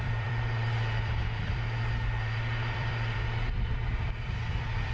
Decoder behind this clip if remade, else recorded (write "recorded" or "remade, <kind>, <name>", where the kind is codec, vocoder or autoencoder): remade, vocoder, BigVGAN v2